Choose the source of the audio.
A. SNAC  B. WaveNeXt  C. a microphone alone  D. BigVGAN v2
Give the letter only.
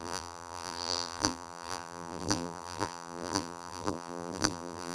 D